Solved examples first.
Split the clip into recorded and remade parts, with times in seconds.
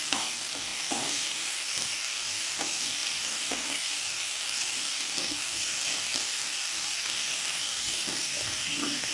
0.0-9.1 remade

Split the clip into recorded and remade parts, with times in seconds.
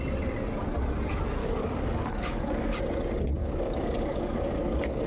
0.0-1.4 recorded; 1.4-2.8 remade; 2.8-3.4 recorded; 3.4-5.1 remade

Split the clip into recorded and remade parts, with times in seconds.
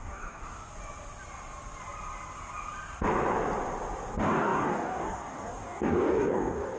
0.0-0.7 remade; 0.7-4.1 recorded; 4.1-6.8 remade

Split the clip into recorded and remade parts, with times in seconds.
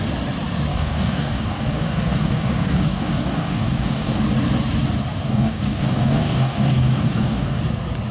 0.0-0.7 recorded; 0.7-4.2 remade; 4.2-5.2 recorded; 5.2-7.6 remade; 7.6-8.1 recorded